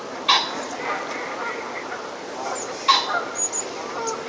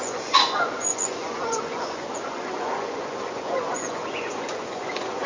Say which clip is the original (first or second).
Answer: first